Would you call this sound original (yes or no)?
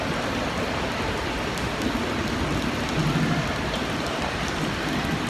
yes